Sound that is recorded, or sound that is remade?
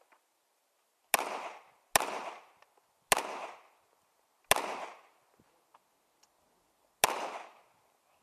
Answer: recorded